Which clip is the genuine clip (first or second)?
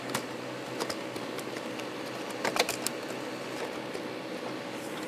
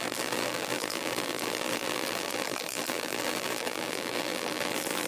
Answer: first